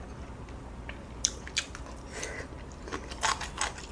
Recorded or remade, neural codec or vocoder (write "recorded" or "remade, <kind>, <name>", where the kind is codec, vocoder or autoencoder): recorded